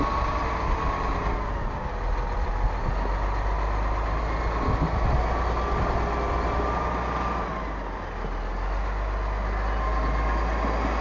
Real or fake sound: real